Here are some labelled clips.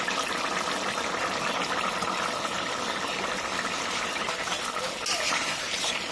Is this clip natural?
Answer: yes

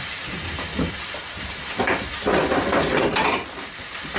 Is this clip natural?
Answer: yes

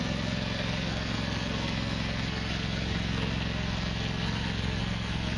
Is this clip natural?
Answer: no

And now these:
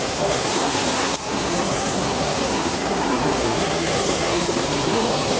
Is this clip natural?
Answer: no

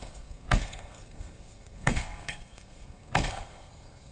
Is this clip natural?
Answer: no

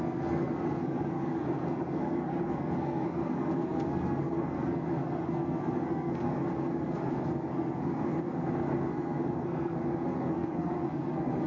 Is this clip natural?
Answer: no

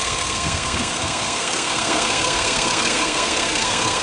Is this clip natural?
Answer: no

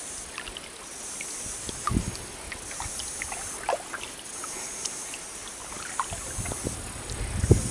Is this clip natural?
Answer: yes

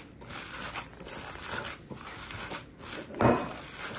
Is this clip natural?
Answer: yes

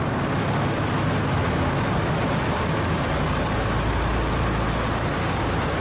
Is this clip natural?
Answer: yes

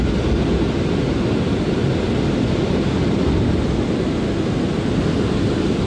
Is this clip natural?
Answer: yes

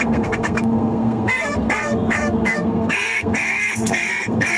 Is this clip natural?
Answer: no